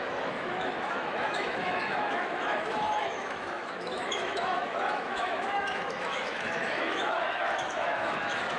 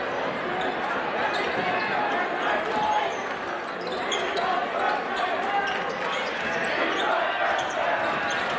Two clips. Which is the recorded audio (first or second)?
second